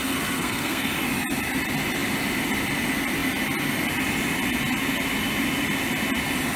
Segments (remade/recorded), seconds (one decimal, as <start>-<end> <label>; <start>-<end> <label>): 0.0-0.9 remade; 0.9-6.6 recorded